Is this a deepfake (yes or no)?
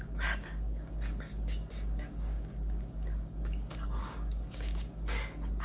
yes